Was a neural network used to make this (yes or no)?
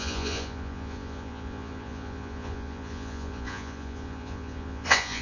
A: yes